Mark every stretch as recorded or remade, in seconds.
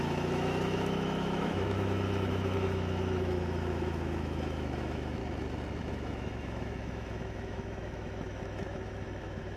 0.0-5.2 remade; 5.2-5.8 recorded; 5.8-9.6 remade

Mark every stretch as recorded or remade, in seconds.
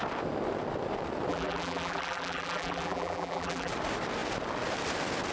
0.0-1.3 recorded; 1.3-3.7 remade; 3.7-5.3 recorded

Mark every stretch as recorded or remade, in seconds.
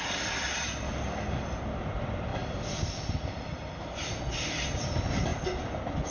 0.0-6.1 recorded